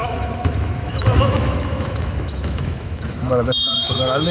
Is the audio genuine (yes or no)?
no